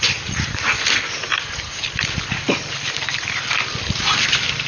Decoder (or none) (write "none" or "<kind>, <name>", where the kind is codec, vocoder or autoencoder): vocoder, BigVGAN v2